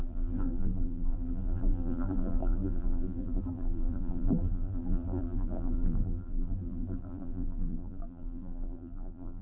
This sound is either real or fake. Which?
fake